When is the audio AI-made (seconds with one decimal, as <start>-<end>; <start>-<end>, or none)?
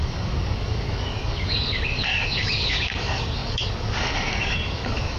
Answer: 0.0-5.2